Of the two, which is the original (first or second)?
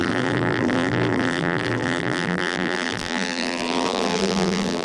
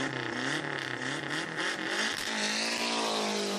second